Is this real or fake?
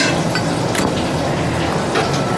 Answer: real